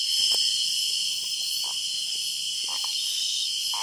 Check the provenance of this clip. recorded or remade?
recorded